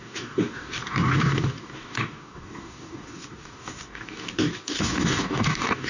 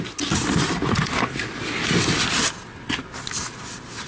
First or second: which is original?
second